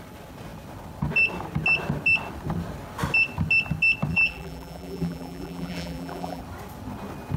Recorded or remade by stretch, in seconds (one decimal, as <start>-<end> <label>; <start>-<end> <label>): 0.0-4.1 recorded; 4.1-6.4 remade; 6.4-7.4 recorded